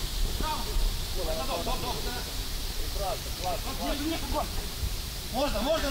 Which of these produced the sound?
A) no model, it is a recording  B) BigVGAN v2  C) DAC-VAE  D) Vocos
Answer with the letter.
B